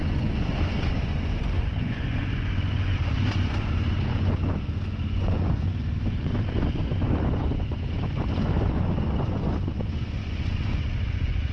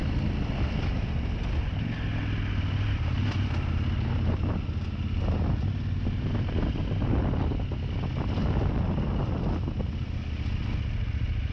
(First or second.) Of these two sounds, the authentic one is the second